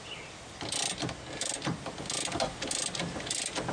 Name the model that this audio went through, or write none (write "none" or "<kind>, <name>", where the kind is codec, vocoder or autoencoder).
none